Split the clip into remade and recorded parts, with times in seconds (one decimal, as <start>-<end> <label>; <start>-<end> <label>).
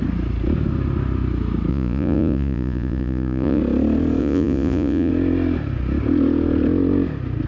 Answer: 0.0-1.7 recorded; 1.7-3.6 remade; 3.6-4.2 recorded; 4.2-5.1 remade; 5.1-7.5 recorded